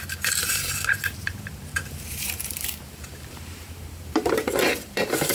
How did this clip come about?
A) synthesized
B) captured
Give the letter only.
A